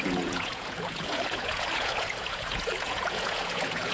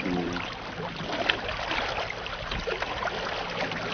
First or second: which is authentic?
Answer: second